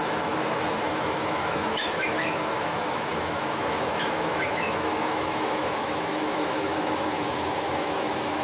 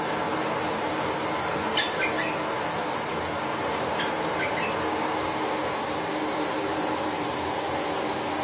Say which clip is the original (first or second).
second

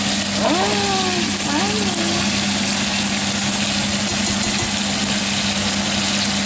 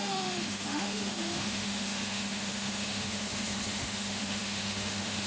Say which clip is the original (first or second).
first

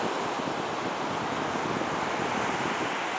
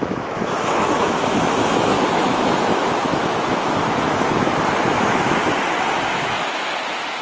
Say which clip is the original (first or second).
first